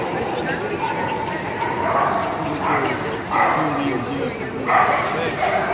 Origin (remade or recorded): recorded